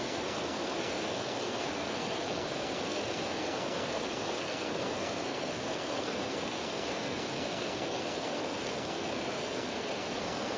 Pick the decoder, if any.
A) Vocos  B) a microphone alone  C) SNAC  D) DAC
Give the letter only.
C